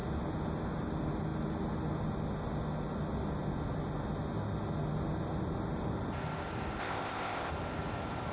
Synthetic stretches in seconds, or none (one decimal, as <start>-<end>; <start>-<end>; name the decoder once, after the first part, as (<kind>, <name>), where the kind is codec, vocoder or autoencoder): 6.8-7.5 (codec, ZipCodec)